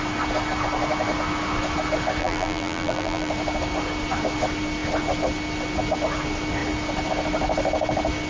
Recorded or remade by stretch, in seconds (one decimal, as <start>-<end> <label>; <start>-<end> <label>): 0.0-2.2 recorded; 2.2-3.3 remade; 3.3-8.3 recorded